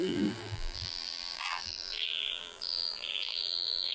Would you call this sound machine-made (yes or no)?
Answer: yes